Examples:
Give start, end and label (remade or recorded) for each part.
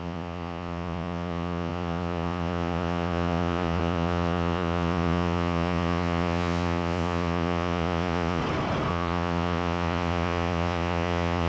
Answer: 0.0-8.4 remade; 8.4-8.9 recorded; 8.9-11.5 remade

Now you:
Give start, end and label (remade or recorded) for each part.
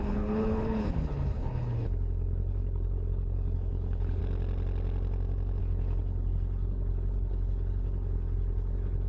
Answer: 0.0-4.2 remade; 4.2-5.6 recorded; 5.6-9.1 remade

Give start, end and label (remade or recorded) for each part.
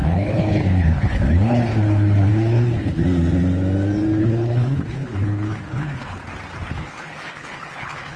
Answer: 0.0-3.0 remade; 3.0-4.2 recorded; 4.2-6.2 remade; 6.2-6.8 recorded; 6.8-8.2 remade